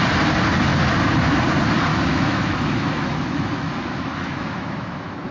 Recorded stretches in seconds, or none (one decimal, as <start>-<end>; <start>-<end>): 0.0-1.9